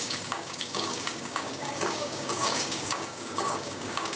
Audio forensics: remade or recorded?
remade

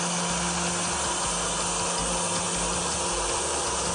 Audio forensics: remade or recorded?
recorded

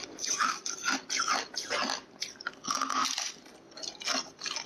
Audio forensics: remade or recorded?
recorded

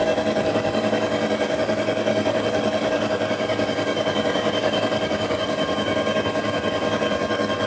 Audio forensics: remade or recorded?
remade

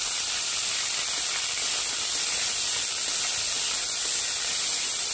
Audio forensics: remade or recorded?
recorded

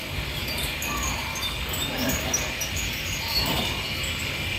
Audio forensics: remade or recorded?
remade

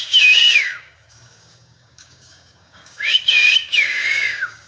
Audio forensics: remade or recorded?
remade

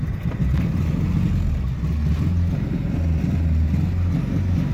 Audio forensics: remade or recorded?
recorded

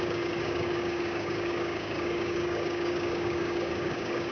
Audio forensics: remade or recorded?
remade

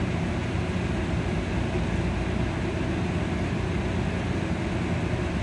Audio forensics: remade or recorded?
recorded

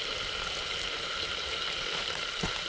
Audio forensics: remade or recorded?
recorded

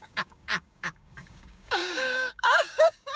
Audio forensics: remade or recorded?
remade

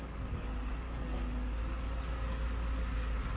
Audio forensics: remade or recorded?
remade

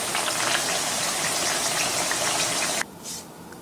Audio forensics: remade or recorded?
recorded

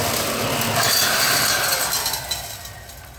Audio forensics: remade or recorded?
recorded